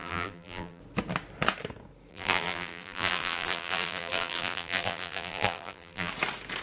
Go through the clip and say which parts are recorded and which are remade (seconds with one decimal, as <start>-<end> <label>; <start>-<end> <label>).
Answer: 0.0-0.8 remade; 0.8-2.1 recorded; 2.1-6.1 remade; 6.1-6.6 recorded